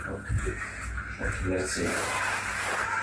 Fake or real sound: real